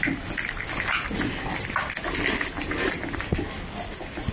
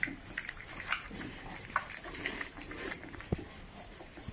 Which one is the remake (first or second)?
second